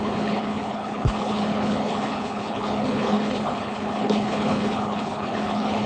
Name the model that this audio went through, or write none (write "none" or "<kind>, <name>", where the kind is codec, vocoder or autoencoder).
codec, HILCodec